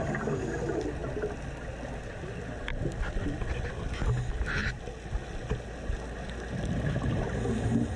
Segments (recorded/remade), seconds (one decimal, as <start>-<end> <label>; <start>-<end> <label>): 0.0-8.0 recorded